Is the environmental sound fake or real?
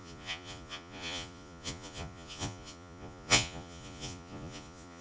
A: fake